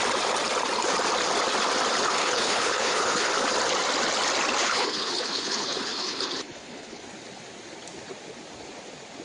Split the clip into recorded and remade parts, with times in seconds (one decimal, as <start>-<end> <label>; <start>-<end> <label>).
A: 0.0-2.2 recorded; 2.2-3.3 remade; 3.3-4.6 recorded; 4.6-7.0 remade; 7.0-9.2 recorded